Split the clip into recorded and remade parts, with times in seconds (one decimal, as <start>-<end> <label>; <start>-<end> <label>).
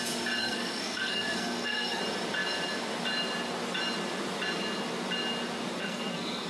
0.0-0.4 recorded; 0.4-2.0 remade; 2.0-5.8 recorded; 5.8-6.5 remade